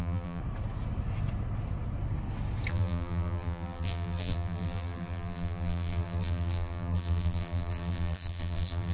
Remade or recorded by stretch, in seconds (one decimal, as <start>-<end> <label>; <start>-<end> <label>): 0.0-0.4 remade; 0.4-2.7 recorded; 2.7-8.9 remade